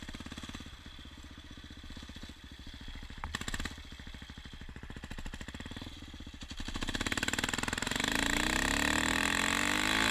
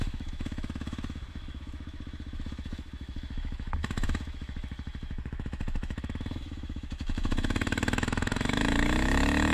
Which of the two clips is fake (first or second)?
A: second